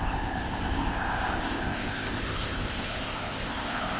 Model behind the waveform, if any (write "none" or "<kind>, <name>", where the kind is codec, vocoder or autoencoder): codec, ZipCodec